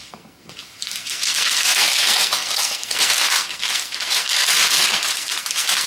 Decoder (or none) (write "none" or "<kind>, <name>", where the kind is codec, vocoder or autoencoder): codec, SNAC